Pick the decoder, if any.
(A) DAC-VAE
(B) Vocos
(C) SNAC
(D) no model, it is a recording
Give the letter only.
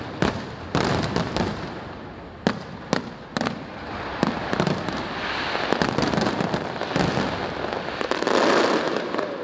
D